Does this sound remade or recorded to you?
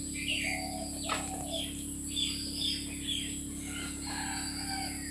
recorded